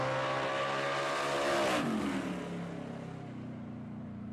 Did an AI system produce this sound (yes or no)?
no